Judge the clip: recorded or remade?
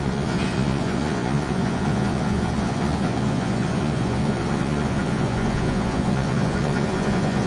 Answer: remade